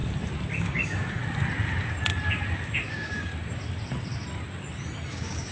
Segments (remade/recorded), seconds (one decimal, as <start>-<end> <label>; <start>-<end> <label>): 0.0-0.6 recorded; 0.6-1.2 remade; 1.2-2.9 recorded; 2.9-3.3 remade; 3.3-5.1 recorded; 5.1-5.5 remade